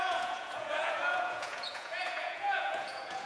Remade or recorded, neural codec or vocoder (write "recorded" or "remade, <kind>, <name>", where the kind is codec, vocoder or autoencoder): remade, vocoder, Vocos